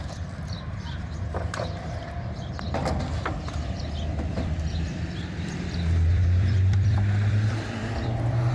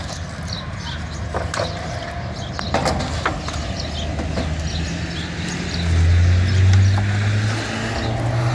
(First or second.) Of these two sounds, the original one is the second